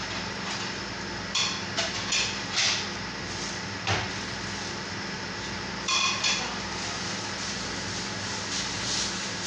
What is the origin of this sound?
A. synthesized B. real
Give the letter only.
B